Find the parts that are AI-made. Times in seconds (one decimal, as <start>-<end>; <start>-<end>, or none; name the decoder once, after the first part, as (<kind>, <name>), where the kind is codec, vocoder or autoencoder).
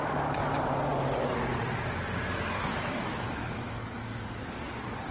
2.7-4.1 (autoencoder, DAC-VAE)